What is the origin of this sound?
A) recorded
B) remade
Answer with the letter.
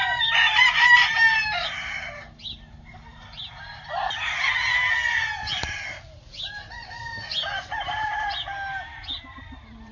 A